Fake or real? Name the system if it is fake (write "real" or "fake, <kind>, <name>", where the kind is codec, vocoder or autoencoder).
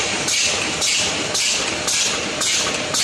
fake, vocoder, BigVGAN v2